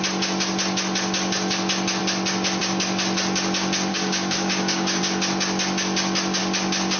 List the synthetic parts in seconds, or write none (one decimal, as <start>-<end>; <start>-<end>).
3.9-5.0